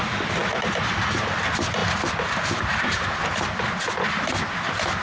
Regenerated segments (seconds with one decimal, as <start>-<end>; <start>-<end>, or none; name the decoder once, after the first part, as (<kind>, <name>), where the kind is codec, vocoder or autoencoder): none